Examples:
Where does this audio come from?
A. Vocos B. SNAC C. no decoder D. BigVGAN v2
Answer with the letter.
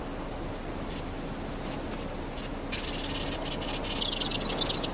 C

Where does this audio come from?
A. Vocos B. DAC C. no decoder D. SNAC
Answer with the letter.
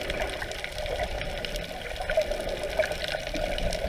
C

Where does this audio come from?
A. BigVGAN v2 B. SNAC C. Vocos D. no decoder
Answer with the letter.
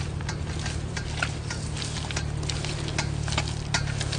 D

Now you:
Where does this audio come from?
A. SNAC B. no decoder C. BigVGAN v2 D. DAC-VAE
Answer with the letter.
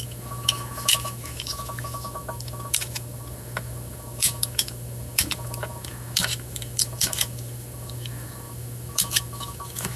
D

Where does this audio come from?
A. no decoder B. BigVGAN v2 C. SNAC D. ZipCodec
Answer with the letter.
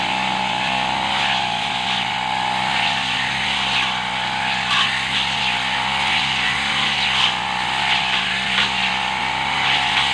A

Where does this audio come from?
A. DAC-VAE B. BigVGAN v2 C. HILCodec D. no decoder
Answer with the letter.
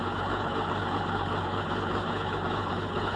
C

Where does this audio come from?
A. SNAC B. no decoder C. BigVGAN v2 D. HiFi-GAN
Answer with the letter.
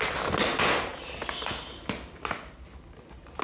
B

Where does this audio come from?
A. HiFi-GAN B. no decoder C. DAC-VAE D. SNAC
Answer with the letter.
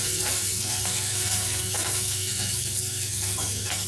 D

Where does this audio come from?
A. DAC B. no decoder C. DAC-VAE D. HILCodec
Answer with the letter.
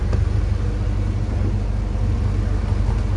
B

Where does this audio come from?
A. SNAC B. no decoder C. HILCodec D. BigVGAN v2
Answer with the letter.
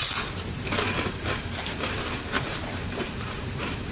D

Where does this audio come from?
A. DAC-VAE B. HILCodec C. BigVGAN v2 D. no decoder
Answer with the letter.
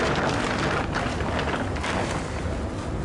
D